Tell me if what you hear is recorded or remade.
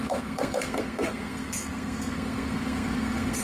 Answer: remade